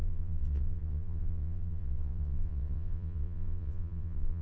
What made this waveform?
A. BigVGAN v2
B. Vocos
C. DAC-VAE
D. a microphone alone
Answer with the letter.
B